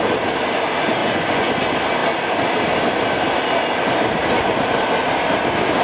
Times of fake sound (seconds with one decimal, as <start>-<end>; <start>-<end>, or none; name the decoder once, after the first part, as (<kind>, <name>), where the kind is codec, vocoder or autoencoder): 1.0-1.5 (vocoder, Vocos)